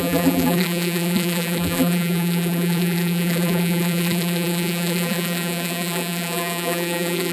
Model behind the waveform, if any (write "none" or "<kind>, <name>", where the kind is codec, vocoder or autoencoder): vocoder, BigVGAN v2